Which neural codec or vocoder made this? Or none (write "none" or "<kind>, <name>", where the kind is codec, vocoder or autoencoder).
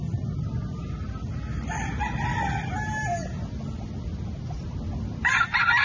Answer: none